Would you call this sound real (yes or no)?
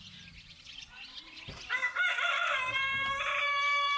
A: no